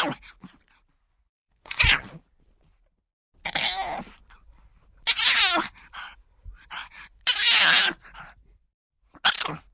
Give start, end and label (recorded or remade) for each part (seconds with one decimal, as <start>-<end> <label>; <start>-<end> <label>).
0.0-1.1 recorded; 1.1-1.8 remade; 1.8-9.7 recorded